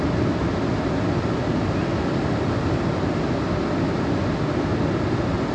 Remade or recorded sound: recorded